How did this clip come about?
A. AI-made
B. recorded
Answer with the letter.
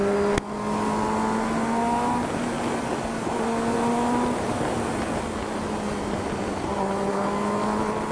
B